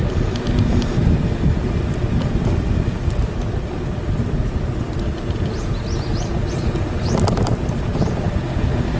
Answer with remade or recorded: recorded